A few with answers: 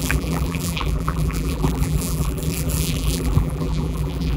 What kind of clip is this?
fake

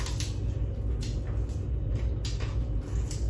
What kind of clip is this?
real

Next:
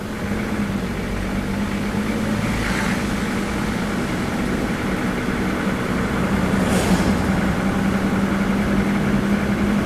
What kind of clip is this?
real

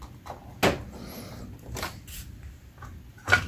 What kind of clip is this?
real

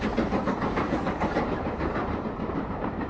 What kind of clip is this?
fake